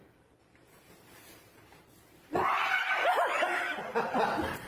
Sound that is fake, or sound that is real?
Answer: fake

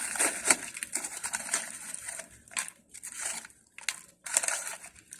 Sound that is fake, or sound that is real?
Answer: real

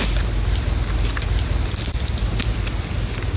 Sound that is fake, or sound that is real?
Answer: real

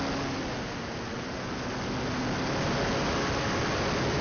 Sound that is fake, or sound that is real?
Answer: real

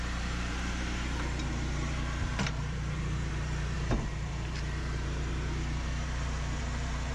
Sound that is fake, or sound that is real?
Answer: fake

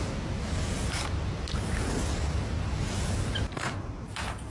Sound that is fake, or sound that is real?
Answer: real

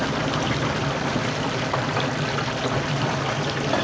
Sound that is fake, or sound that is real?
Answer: real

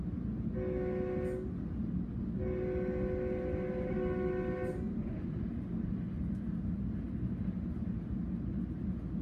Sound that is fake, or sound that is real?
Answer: real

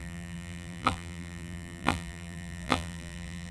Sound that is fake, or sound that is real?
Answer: fake